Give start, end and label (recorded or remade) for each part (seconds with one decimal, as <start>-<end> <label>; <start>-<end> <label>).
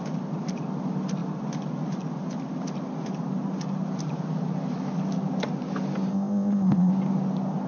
0.0-6.1 recorded; 6.1-6.9 remade; 6.9-7.7 recorded